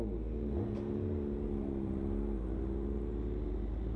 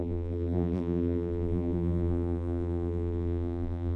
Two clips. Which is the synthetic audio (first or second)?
second